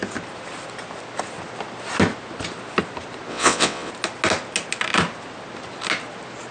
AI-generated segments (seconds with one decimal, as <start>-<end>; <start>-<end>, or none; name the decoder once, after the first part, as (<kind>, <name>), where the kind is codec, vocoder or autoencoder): 3.3-3.9 (vocoder, WaveNeXt)